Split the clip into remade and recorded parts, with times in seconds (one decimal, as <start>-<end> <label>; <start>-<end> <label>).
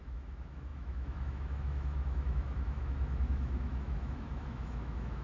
0.0-5.2 remade